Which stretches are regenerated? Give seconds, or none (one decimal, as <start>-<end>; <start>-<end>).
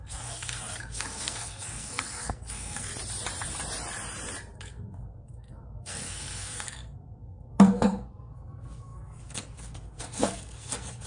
0.0-2.9; 4.6-11.1